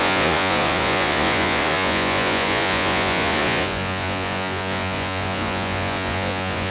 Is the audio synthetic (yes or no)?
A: yes